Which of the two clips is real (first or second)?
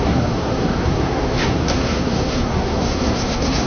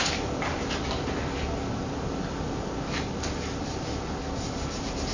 second